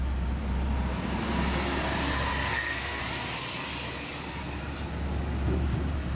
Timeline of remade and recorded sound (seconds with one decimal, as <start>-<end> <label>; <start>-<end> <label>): 0.0-2.3 recorded; 2.3-3.0 remade; 3.0-6.1 recorded

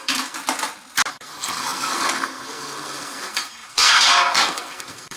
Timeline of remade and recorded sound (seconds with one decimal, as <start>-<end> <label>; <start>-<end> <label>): 0.0-0.4 remade; 0.4-1.1 recorded; 1.1-5.2 remade

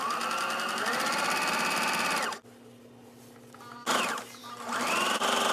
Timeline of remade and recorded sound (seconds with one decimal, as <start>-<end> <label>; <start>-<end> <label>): 0.0-5.5 recorded

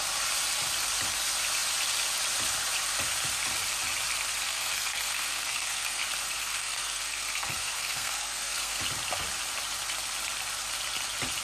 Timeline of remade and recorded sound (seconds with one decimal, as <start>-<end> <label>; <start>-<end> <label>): 0.0-4.5 recorded; 4.5-6.0 remade; 6.0-6.4 recorded; 6.4-8.8 remade; 8.8-11.4 recorded

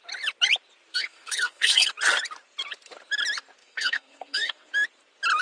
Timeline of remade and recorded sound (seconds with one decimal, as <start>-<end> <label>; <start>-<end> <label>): 0.0-0.9 recorded; 0.9-1.9 remade; 1.9-3.6 recorded; 3.6-4.7 remade; 4.7-5.4 recorded